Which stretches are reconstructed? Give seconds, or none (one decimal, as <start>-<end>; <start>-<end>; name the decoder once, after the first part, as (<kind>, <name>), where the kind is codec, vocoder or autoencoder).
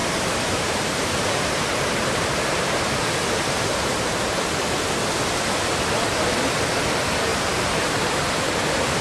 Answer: 0.0-4.9 (vocoder, BigVGAN v2); 7.3-8.5